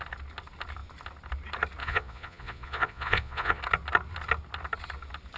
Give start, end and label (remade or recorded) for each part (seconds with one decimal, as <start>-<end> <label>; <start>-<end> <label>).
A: 0.0-1.8 recorded; 1.8-3.6 remade; 3.6-5.4 recorded